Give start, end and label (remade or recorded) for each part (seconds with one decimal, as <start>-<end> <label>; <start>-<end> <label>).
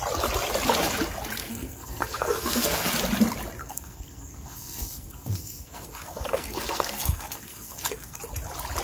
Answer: 0.0-1.4 recorded; 1.4-2.9 remade; 2.9-3.6 recorded; 3.6-8.2 remade; 8.2-8.8 recorded